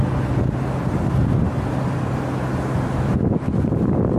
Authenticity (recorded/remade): recorded